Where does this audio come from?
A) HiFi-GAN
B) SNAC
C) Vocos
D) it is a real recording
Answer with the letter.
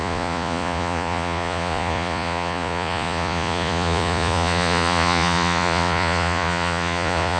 C